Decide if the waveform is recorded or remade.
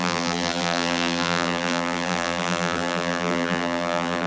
remade